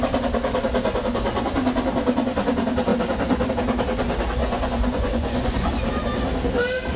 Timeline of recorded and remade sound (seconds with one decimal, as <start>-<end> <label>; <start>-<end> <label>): 0.0-4.4 recorded; 4.4-5.7 remade; 5.7-7.0 recorded